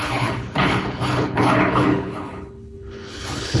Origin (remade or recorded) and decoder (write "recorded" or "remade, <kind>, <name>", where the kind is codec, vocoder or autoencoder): remade, codec, HILCodec